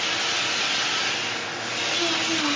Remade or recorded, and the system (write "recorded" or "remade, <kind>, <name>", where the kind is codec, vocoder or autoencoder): recorded